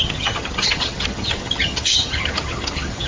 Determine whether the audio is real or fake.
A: fake